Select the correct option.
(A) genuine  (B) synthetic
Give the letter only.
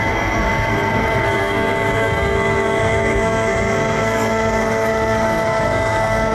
B